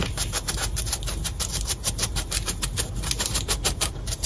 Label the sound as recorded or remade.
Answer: remade